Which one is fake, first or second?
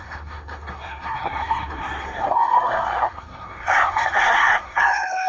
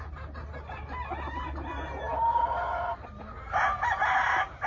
first